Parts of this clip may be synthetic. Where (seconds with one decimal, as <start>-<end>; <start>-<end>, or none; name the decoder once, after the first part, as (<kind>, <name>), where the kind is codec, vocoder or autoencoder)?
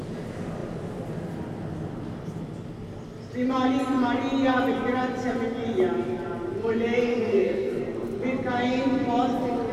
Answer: 7.1-7.8 (codec, SNAC)